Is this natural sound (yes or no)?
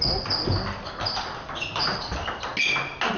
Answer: yes